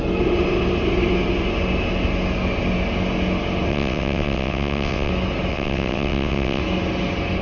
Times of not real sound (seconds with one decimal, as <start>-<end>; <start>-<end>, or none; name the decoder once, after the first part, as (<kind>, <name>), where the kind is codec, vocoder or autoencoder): 3.7-5.1 (vocoder, WaveNeXt); 5.5-6.6